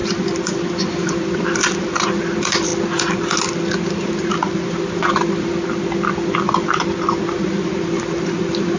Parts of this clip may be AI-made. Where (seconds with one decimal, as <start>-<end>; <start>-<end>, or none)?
0.0-2.7; 3.8-5.5; 7.3-8.8